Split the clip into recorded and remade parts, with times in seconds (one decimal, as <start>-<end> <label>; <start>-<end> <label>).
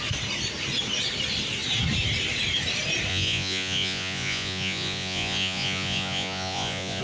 0.0-3.1 recorded; 3.1-7.0 remade